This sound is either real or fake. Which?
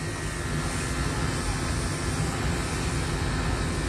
real